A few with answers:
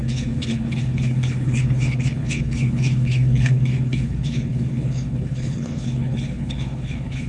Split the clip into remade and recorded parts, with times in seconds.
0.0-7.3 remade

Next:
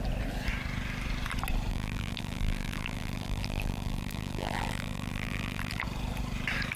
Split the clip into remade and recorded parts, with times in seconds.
0.0-1.7 recorded; 1.7-5.8 remade; 5.8-6.8 recorded

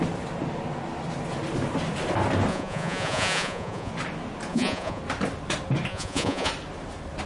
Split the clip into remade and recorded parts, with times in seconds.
0.0-2.5 recorded; 2.5-3.9 remade; 3.9-4.5 recorded; 4.5-5.0 remade; 5.0-5.9 recorded; 5.9-6.5 remade; 6.5-7.3 recorded